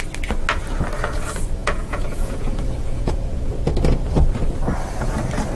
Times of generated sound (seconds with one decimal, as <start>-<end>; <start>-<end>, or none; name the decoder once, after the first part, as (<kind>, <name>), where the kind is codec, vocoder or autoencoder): 1.6-3.5 (vocoder, Vocos)